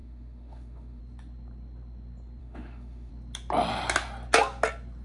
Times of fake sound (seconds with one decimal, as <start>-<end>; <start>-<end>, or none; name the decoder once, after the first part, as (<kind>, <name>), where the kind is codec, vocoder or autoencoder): 0.0-1.0 (autoencoder, DAC-VAE); 2.4-3.1